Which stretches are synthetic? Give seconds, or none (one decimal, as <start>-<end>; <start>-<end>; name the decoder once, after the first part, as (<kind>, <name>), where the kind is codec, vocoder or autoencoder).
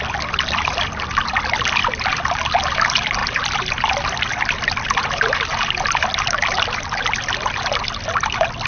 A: none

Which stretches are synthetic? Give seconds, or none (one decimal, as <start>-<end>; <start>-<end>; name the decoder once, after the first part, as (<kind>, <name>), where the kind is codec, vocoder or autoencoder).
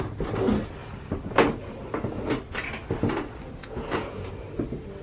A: 3.6-4.3 (vocoder, Vocos)